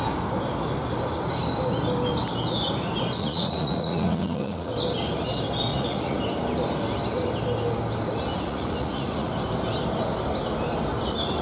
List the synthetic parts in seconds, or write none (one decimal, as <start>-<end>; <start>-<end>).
3.2-4.7; 5.7-6.2; 8.3-9.3